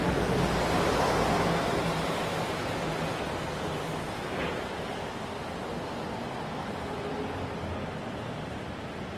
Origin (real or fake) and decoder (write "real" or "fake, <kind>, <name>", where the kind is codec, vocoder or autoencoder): real